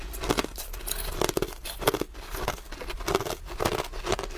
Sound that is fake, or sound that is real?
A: real